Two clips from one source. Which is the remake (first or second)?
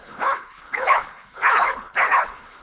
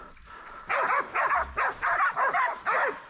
first